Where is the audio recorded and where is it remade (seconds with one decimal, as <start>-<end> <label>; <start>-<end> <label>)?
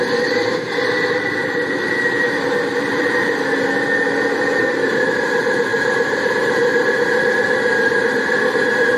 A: 0.0-1.4 recorded; 1.4-3.4 remade; 3.4-5.7 recorded; 5.7-6.3 remade; 6.3-9.0 recorded